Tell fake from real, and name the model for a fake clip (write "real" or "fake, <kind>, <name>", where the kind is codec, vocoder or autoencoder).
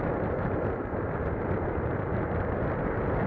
real